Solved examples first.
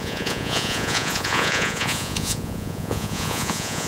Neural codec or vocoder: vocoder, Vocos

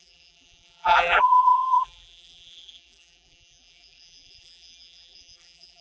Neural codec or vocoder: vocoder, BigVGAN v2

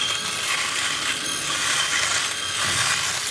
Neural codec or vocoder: none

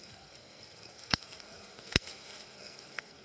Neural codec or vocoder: codec, SNAC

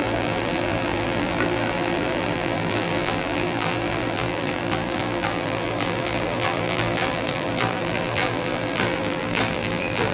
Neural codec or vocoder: vocoder, BigVGAN v2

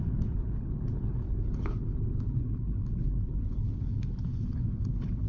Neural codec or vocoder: codec, HILCodec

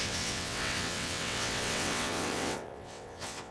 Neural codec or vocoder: vocoder, WaveNeXt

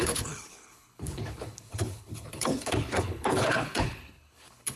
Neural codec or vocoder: codec, HILCodec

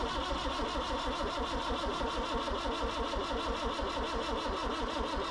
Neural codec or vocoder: none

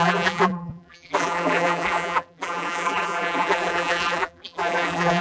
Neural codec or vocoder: vocoder, BigVGAN v2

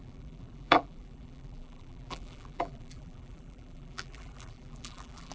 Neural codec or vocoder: vocoder, BigVGAN v2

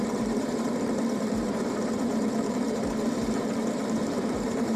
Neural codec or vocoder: vocoder, BigVGAN v2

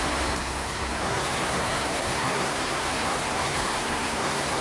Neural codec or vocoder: codec, SNAC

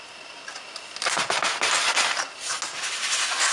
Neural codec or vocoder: none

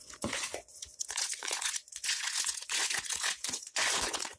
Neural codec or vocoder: vocoder, Vocos